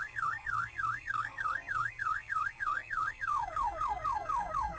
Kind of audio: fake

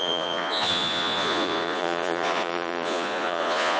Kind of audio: fake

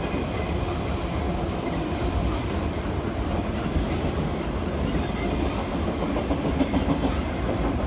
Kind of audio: real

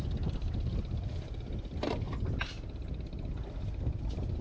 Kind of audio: real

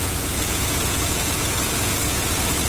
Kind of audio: fake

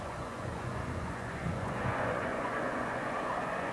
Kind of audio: fake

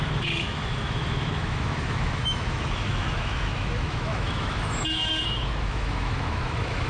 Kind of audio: fake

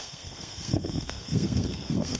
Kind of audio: fake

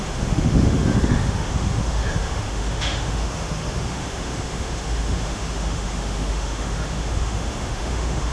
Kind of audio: fake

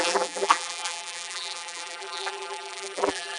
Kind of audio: fake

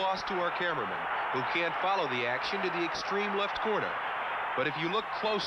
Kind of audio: real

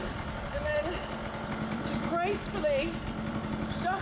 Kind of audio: real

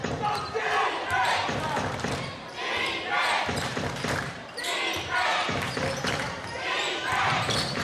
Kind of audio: fake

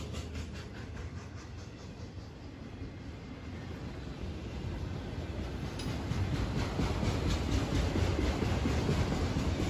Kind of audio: real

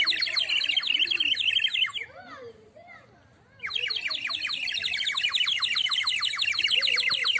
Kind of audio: real